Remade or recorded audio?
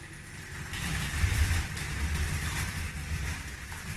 remade